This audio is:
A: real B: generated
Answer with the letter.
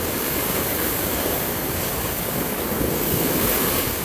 B